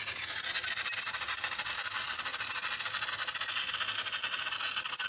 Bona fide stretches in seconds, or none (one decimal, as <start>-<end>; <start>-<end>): 0.0-5.1

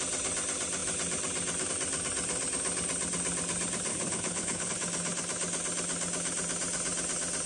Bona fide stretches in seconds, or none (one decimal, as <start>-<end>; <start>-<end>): 0.0-3.9; 4.7-7.5

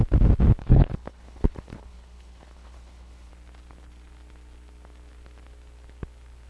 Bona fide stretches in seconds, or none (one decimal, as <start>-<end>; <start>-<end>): 0.0-0.6; 3.3-6.5

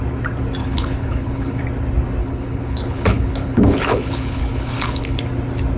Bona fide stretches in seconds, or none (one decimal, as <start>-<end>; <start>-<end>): 0.0-0.6; 1.6-2.2; 5.2-5.8

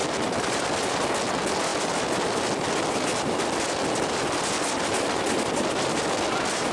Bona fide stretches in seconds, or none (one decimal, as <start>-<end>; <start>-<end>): 0.0-6.7

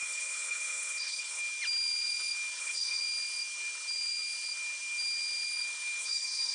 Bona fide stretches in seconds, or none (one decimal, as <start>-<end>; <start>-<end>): 1.4-2.6; 3.0-6.0

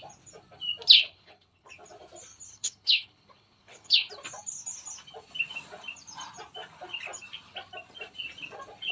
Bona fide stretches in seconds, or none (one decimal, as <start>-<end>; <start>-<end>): 0.0-1.0; 1.7-2.5; 4.1-8.9